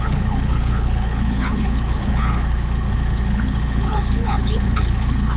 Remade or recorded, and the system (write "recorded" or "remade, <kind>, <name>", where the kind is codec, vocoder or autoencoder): remade, codec, HILCodec